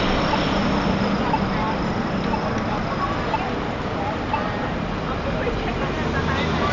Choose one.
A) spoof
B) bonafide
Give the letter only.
B